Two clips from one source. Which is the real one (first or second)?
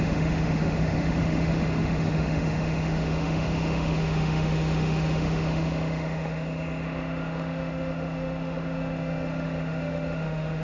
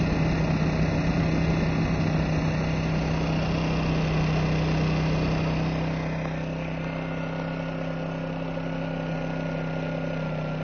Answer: second